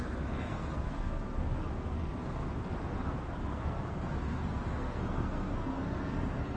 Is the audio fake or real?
fake